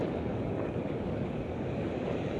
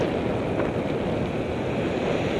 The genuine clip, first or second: second